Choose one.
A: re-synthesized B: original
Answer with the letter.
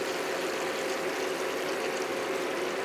B